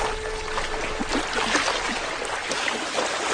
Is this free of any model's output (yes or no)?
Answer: yes